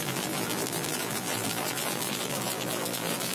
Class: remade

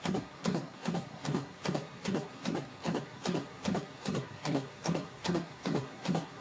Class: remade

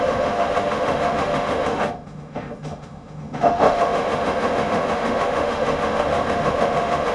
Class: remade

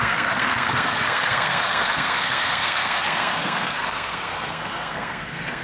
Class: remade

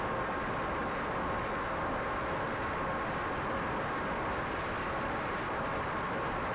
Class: recorded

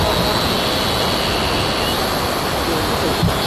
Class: recorded